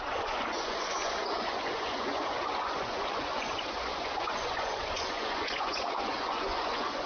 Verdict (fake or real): fake